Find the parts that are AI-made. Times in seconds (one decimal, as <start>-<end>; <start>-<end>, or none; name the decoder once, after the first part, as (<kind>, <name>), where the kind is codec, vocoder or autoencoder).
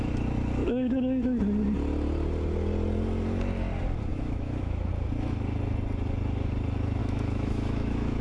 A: 0.6-1.4 (autoencoder, DAC-VAE); 4.1-4.9; 7.0-8.2